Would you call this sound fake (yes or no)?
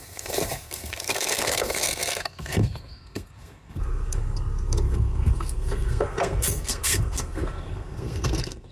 yes